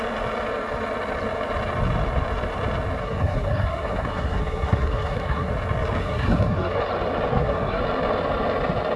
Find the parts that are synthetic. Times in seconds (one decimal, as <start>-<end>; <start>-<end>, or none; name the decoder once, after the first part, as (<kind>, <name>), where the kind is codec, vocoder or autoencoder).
3.0-5.5 (codec, SNAC); 6.0-6.8; 7.3-7.8